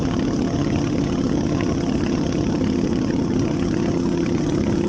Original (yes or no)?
no